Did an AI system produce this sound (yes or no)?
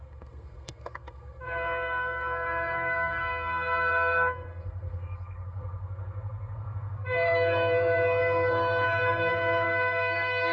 yes